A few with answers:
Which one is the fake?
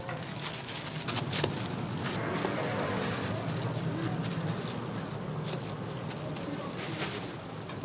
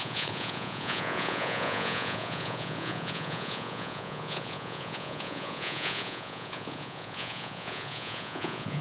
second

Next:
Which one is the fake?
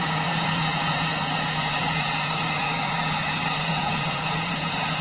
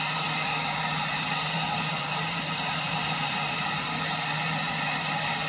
first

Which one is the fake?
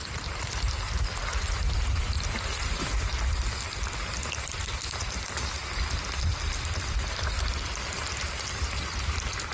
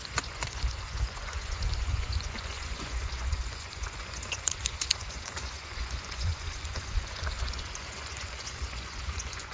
second